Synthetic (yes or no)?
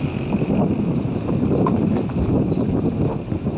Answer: no